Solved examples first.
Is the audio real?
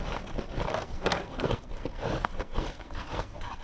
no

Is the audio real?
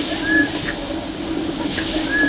yes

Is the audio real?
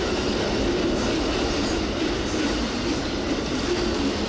yes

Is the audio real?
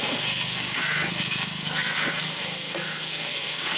no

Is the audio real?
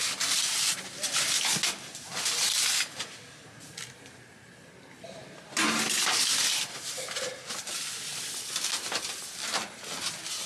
yes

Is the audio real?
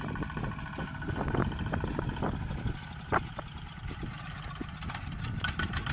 yes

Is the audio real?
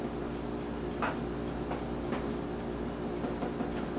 yes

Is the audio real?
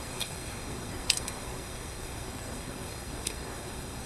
no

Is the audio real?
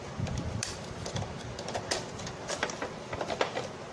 yes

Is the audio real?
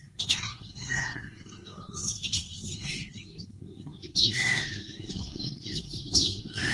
no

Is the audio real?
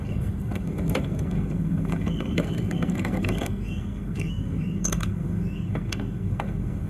no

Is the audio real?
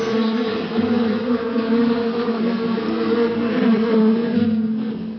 no